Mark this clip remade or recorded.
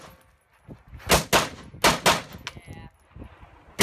recorded